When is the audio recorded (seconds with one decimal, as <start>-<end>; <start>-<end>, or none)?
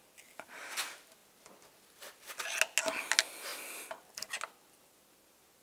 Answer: 0.0-5.6